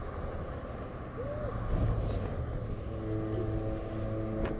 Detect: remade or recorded recorded